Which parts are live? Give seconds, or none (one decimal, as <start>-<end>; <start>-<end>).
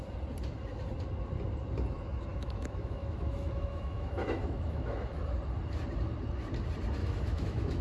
0.0-2.3; 5.2-7.0